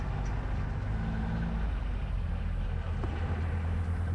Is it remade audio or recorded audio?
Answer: recorded